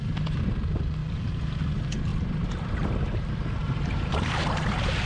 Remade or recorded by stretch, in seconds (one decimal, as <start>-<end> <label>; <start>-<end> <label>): 0.0-1.0 recorded; 1.0-1.6 remade; 1.6-2.1 recorded; 2.1-3.2 remade; 3.2-3.6 recorded; 3.6-5.1 remade

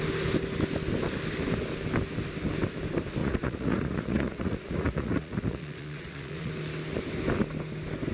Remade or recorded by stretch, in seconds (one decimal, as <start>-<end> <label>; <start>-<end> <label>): 0.0-3.2 recorded; 3.2-6.5 remade; 6.5-8.1 recorded

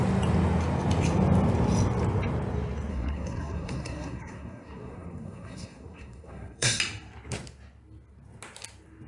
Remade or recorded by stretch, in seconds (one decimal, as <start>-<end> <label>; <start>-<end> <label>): 0.0-2.9 recorded; 2.9-6.8 remade; 6.8-9.1 recorded

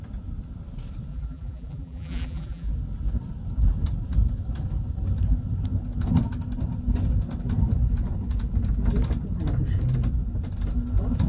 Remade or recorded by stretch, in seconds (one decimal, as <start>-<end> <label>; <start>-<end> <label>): 0.0-1.1 recorded; 1.1-2.7 remade; 2.7-11.3 recorded

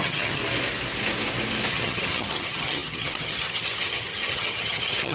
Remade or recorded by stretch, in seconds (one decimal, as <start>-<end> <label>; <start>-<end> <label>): 0.0-0.4 remade; 0.4-1.7 recorded; 1.7-5.1 remade

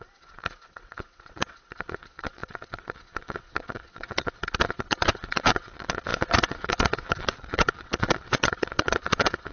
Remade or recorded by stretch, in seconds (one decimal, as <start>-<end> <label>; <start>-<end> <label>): 0.0-9.5 remade